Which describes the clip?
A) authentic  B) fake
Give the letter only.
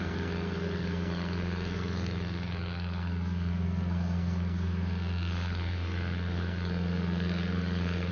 B